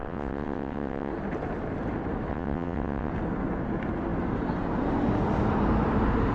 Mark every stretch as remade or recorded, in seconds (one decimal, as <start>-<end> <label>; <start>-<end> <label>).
0.0-1.1 remade; 1.1-2.3 recorded; 2.3-3.1 remade; 3.1-6.3 recorded